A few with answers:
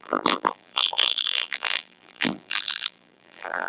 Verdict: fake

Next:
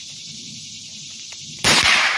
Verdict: fake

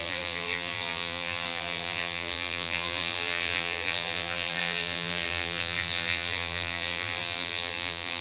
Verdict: fake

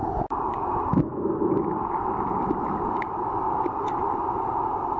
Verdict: real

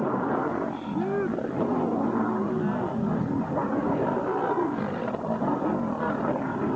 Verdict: real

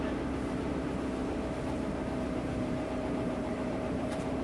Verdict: fake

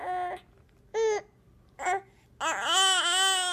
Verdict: real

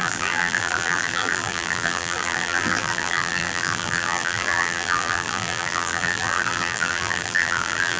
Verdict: fake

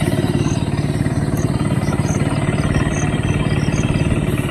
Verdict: real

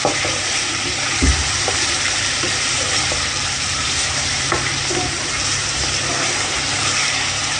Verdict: fake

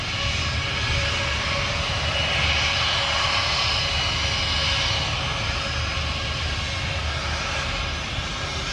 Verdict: real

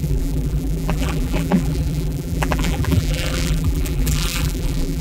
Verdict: fake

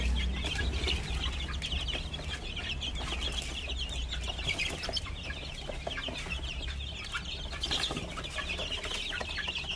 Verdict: real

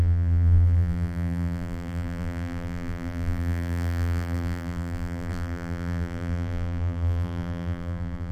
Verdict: fake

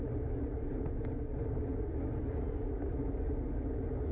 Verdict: real